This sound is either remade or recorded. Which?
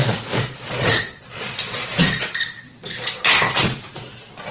remade